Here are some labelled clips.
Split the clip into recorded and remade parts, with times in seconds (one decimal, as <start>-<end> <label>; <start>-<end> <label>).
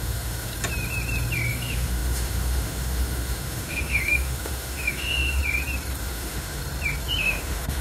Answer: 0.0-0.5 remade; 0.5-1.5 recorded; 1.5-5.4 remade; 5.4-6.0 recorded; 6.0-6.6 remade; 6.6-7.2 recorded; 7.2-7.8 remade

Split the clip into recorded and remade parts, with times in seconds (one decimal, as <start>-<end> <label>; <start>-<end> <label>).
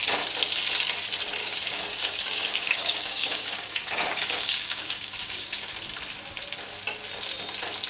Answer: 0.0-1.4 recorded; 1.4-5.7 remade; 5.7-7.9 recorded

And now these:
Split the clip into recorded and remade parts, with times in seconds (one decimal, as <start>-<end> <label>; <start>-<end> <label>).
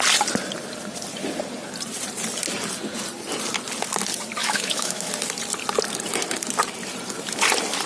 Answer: 0.0-4.4 recorded; 4.4-5.1 remade; 5.1-7.9 recorded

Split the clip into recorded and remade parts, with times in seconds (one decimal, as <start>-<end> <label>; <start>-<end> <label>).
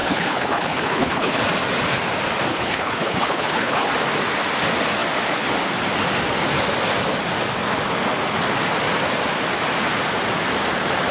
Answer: 0.0-1.4 remade; 1.4-2.5 recorded; 2.5-3.9 remade; 3.9-11.1 recorded